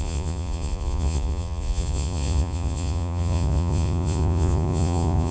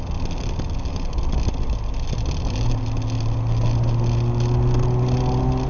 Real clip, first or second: second